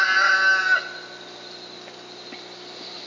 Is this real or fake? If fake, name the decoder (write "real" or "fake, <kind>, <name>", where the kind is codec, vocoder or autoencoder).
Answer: real